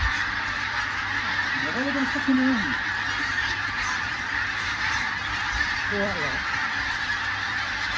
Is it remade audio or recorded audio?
remade